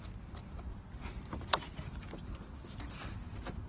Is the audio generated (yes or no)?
no